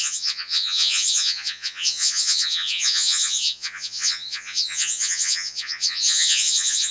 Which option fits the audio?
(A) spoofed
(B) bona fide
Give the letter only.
A